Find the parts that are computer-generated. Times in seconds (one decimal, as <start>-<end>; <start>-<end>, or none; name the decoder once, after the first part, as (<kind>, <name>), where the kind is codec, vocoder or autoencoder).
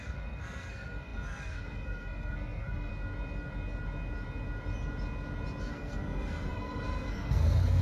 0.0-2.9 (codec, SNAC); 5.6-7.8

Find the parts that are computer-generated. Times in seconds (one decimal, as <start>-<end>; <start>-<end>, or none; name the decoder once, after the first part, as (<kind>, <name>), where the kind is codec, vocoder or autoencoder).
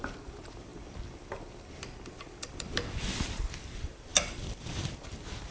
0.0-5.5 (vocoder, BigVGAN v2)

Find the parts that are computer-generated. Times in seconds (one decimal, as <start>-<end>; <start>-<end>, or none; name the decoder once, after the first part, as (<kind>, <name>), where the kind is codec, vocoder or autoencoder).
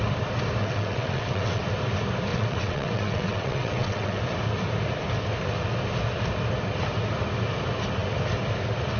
0.6-1.6 (vocoder, WaveNeXt); 2.3-4.2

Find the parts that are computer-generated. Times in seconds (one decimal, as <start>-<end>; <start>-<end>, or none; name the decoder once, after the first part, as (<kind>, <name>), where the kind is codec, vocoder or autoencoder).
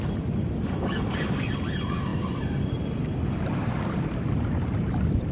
none